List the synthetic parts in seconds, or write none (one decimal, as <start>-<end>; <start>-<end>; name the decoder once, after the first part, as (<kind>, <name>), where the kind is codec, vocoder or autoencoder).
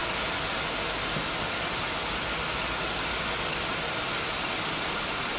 none